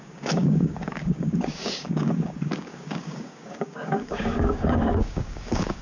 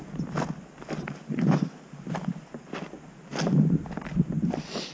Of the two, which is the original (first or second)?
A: second